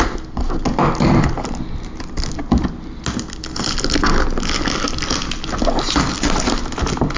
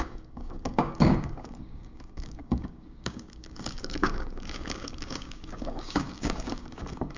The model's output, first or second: second